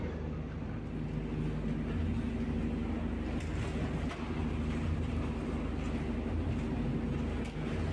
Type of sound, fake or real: real